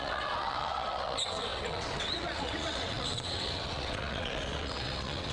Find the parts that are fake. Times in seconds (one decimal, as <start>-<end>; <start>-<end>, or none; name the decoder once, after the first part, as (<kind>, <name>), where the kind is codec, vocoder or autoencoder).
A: 0.0-5.3 (vocoder, WaveNeXt)